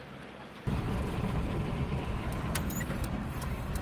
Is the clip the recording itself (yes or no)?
no